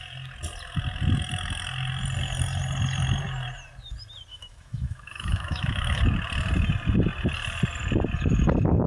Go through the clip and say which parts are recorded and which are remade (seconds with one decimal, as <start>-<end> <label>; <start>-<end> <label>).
0.0-4.3 recorded; 4.3-6.0 remade; 6.0-8.9 recorded